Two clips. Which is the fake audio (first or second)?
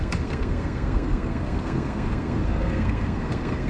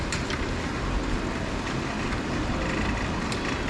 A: first